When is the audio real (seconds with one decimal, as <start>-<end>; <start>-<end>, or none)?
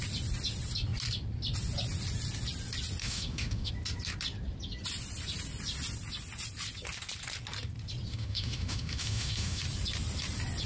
0.0-3.0; 3.7-8.1; 9.6-10.7